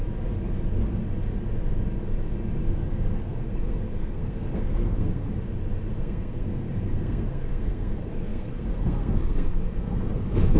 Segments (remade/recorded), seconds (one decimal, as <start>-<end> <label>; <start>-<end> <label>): 0.0-2.6 recorded; 2.6-5.3 remade; 5.3-5.9 recorded; 5.9-10.6 remade